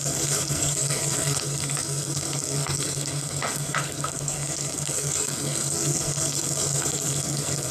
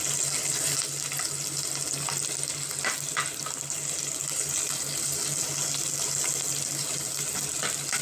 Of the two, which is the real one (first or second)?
second